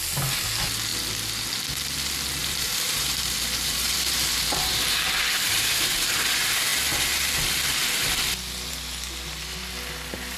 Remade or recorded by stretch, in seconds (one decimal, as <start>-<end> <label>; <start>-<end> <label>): 0.0-2.4 recorded; 2.4-6.3 remade; 6.3-10.4 recorded